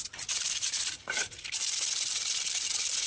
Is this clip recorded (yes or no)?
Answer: no